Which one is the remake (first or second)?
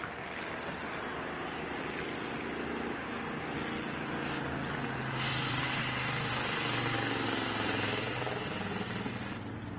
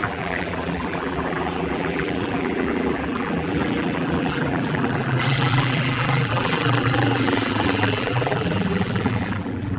second